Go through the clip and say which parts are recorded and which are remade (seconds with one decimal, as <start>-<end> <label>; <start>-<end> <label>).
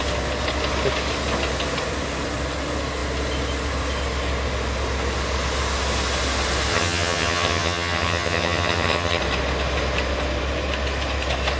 0.0-6.7 recorded; 6.7-9.2 remade; 9.2-11.6 recorded